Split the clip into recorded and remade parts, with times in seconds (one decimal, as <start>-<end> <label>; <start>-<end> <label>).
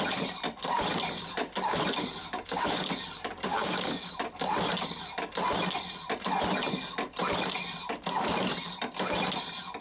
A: 0.0-2.2 recorded; 2.2-2.9 remade; 2.9-3.5 recorded; 3.5-4.1 remade; 4.1-9.8 recorded